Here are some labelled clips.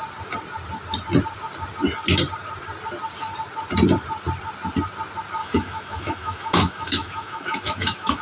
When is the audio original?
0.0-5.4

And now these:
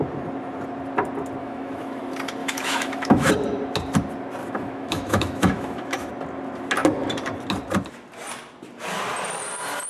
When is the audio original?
0.0-1.4; 2.0-2.4; 3.3-4.4; 6.1-9.9